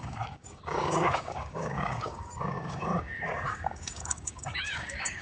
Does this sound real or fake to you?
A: fake